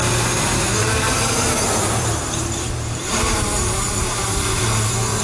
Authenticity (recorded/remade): remade